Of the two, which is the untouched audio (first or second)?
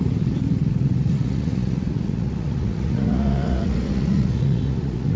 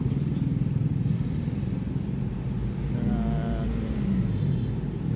second